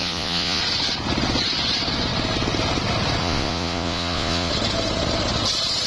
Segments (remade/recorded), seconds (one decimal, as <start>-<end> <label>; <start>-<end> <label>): 0.0-0.6 remade; 0.6-3.2 recorded; 3.2-4.5 remade; 4.5-5.9 recorded

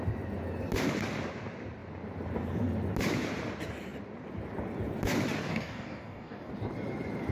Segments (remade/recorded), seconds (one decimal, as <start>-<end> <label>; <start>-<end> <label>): 0.0-5.5 recorded; 5.5-6.5 remade; 6.5-7.3 recorded

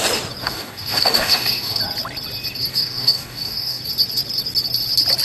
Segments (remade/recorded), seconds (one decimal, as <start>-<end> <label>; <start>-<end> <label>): 0.0-0.4 recorded; 0.4-1.8 remade; 1.8-2.7 recorded; 2.7-3.8 remade; 3.8-5.2 recorded

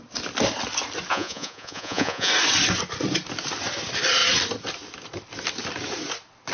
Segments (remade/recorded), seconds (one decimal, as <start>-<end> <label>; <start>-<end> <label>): 0.0-1.1 recorded; 1.1-2.3 remade; 2.3-6.5 recorded

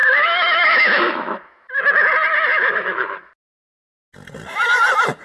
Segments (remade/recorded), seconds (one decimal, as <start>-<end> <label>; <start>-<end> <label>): 0.0-1.7 remade; 1.7-2.5 recorded; 2.5-3.3 remade; 3.3-5.2 recorded